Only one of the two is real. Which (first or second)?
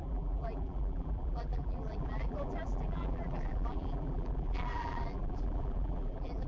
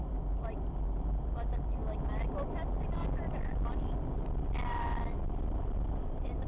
second